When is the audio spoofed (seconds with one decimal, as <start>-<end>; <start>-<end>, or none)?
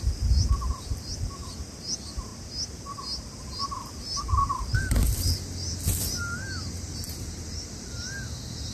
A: 0.0-2.3; 3.5-8.7